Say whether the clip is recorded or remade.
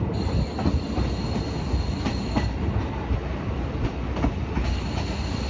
recorded